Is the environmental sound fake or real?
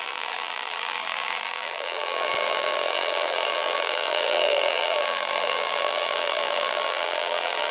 fake